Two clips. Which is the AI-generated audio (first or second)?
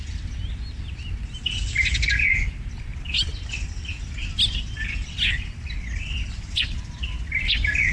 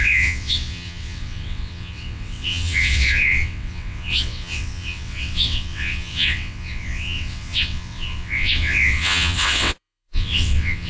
second